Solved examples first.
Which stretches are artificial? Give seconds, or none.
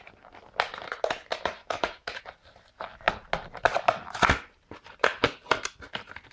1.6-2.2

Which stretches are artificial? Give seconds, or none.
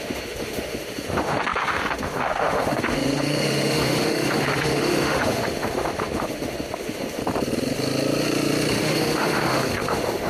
0.0-7.2; 8.7-10.3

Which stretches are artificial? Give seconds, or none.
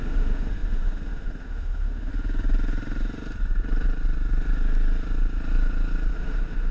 0.0-2.1; 6.1-6.7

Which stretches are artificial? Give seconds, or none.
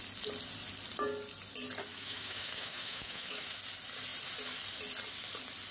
1.9-3.6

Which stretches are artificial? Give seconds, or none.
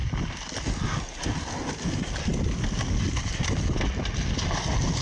none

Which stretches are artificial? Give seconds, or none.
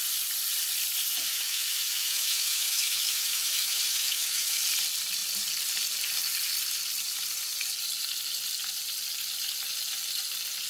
1.3-4.6